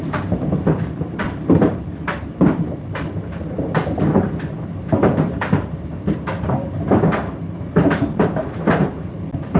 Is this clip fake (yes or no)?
yes